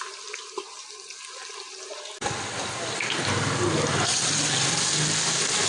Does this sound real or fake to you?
real